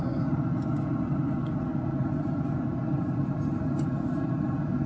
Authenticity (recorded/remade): recorded